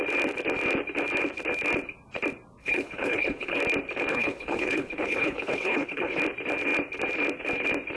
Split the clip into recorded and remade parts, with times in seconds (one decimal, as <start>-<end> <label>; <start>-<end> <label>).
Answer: 0.0-2.6 recorded; 2.6-3.6 remade; 3.6-4.1 recorded; 4.1-6.2 remade; 6.2-8.0 recorded